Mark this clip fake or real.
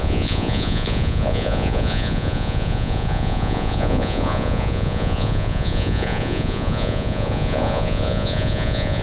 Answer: fake